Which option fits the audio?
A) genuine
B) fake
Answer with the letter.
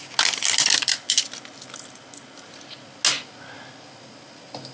A